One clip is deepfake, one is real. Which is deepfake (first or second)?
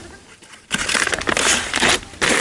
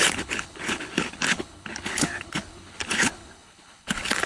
second